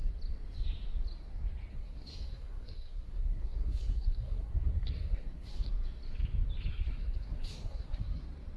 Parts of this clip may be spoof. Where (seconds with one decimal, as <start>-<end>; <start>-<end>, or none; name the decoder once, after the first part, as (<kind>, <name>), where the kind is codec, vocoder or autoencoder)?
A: 1.7-5.7 (codec, SNAC); 6.7-8.2

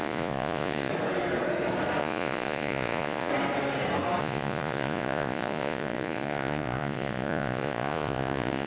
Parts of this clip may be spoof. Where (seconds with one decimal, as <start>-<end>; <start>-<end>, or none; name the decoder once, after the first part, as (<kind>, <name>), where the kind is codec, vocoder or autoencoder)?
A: 0.0-0.9 (vocoder, Vocos); 2.0-3.3; 4.2-8.7

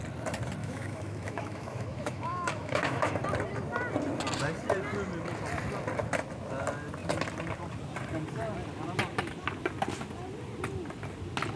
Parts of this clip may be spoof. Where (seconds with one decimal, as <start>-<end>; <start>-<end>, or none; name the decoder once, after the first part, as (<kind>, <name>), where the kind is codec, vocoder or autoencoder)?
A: 0.6-3.2 (autoencoder, DAC-VAE)

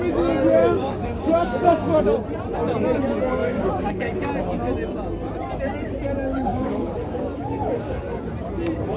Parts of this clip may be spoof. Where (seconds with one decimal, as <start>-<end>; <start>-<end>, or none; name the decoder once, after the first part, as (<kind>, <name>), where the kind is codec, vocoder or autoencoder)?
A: 0.6-2.0 (codec, DAC); 3.4-4.3; 6.3-8.2

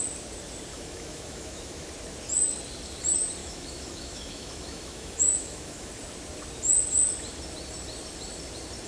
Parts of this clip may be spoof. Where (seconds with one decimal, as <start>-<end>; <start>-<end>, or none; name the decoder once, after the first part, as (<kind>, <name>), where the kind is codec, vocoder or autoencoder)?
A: 0.7-1.9 (autoencoder, DAC-VAE); 3.4-5.9

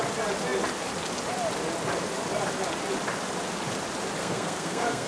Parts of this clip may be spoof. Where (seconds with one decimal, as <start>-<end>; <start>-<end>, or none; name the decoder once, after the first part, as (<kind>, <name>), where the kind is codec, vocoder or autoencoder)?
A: 4.2-5.1 (codec, SNAC)

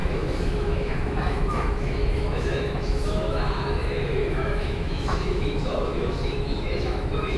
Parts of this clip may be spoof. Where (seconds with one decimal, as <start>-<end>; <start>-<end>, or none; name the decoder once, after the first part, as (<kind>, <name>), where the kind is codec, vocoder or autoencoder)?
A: 0.0-7.4 (autoencoder, DAC-VAE)

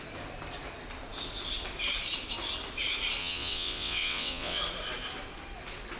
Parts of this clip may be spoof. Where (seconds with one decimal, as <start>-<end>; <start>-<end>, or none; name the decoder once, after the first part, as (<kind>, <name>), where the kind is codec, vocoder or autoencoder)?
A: 3.2-4.6 (vocoder, WaveNeXt)